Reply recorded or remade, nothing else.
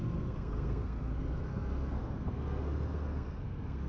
remade